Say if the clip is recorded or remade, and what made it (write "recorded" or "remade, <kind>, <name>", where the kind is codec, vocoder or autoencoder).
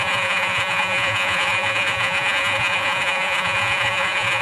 remade, vocoder, Vocos